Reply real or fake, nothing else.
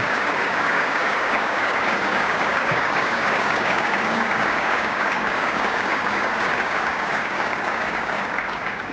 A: fake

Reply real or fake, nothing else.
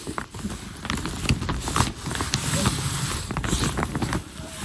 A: real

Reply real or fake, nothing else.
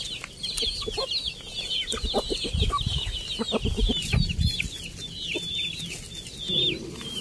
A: real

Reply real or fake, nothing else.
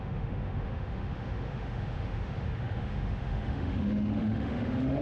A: fake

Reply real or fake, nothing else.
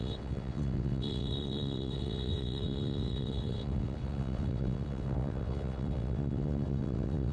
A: fake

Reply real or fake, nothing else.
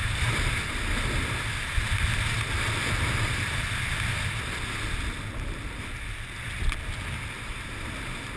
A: real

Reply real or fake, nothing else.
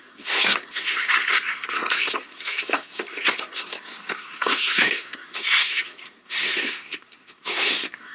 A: fake